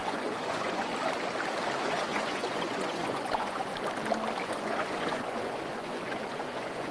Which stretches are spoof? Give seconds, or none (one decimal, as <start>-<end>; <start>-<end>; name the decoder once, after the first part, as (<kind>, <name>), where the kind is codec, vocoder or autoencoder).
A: 0.0-0.9 (vocoder, Vocos); 1.8-3.7; 4.4-6.9